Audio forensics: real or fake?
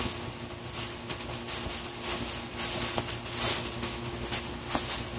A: real